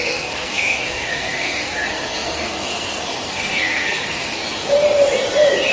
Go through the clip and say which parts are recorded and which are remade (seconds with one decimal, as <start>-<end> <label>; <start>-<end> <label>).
0.0-4.4 remade; 4.4-5.7 recorded